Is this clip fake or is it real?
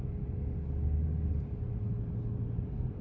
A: real